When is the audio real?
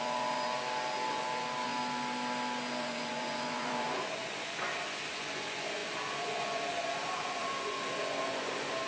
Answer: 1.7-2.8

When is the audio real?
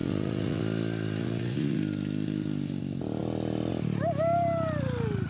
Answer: 0.6-1.2; 1.8-5.3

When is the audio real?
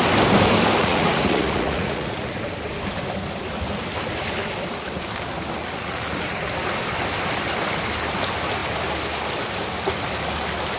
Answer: 0.0-0.8; 2.4-5.6; 6.5-10.8